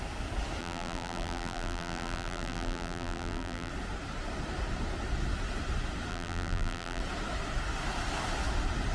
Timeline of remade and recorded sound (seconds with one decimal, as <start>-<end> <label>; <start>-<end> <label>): 0.0-0.6 recorded; 0.6-3.7 remade; 3.7-6.1 recorded; 6.1-7.0 remade; 7.0-8.9 recorded